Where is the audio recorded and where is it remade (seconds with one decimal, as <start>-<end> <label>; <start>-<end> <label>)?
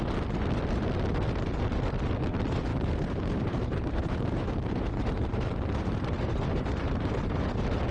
0.0-2.7 recorded; 2.7-7.4 remade; 7.4-7.9 recorded